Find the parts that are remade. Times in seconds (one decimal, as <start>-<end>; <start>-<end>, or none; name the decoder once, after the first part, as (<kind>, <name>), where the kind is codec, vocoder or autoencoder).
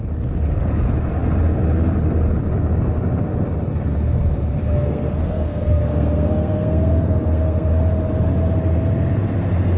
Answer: 4.6-7.8 (codec, SNAC)